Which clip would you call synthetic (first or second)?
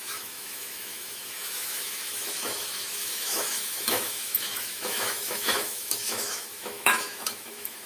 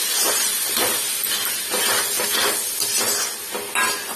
first